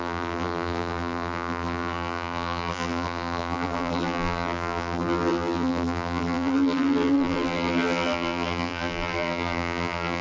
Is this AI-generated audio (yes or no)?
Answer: yes